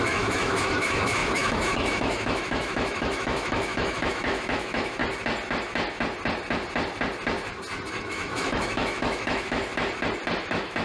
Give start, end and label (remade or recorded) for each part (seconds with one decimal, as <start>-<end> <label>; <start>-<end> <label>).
0.0-5.0 remade; 5.0-7.9 recorded; 7.9-9.7 remade; 9.7-10.4 recorded; 10.4-10.8 remade